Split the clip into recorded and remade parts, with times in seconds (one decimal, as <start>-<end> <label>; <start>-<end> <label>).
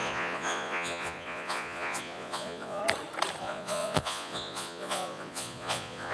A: 0.0-2.8 remade; 2.8-3.4 recorded; 3.4-6.1 remade